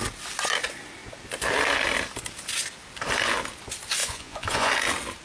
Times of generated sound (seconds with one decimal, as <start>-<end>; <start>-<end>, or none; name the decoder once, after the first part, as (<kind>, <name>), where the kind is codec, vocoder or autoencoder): 4.0-4.7 (vocoder, Vocos)